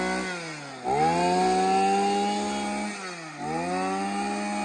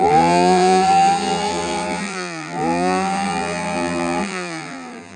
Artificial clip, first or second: second